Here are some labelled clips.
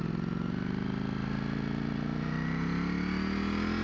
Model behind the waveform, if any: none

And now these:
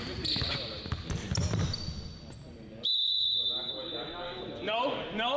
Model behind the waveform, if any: none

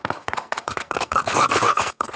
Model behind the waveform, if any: codec, SNAC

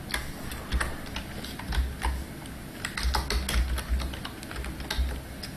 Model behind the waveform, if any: none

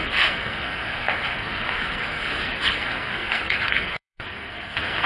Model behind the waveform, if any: codec, SNAC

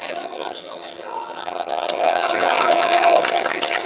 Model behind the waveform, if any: vocoder, HiFi-GAN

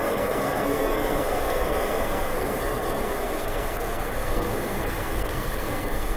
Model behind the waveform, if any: codec, SNAC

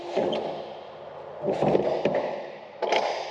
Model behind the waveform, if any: none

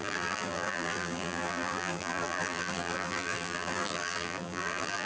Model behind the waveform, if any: vocoder, BigVGAN v2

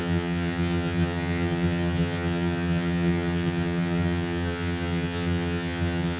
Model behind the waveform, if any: vocoder, HiFi-GAN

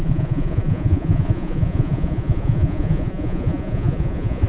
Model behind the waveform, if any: vocoder, Vocos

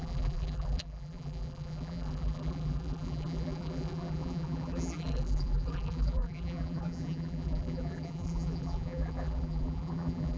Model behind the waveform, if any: vocoder, BigVGAN v2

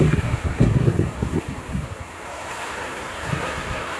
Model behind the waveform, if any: codec, SNAC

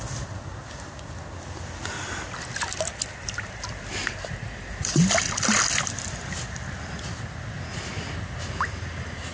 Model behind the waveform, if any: none